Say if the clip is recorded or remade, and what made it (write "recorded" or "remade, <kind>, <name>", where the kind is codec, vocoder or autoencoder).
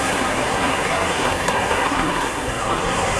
remade, codec, SNAC